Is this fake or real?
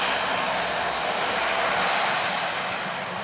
real